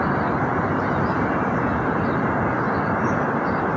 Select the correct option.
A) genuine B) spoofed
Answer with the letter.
A